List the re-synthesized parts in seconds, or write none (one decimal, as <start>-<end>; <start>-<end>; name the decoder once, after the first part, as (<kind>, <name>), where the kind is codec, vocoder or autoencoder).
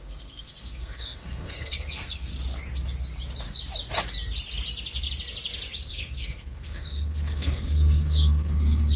0.0-2.3 (codec, SNAC); 5.9-9.0